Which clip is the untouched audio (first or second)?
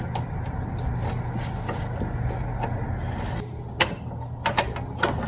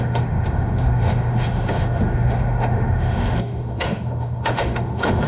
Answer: first